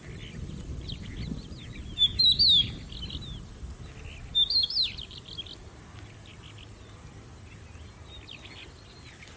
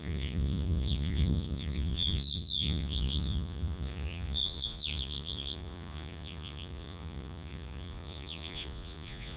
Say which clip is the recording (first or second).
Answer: first